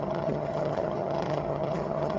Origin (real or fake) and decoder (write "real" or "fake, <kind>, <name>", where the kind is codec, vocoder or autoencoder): fake, vocoder, HiFi-GAN